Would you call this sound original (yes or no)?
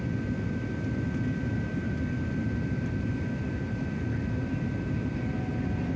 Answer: yes